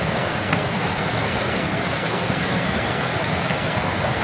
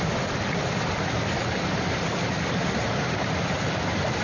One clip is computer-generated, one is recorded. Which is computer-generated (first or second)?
first